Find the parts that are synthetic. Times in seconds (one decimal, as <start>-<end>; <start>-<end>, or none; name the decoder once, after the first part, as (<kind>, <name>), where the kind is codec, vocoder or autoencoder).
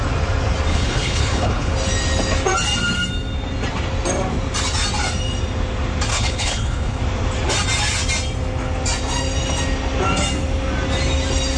0.7-1.7 (codec, HILCodec); 6.1-7.0